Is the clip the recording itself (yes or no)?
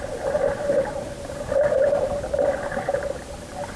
yes